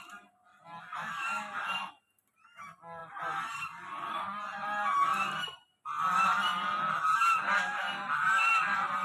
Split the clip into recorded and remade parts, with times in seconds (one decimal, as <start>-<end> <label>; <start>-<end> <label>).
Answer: 0.0-9.0 recorded